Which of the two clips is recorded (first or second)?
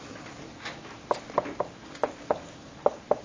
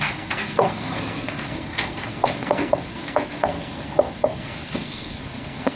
first